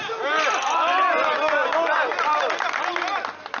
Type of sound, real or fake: real